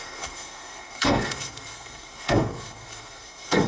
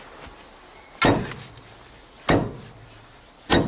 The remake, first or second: first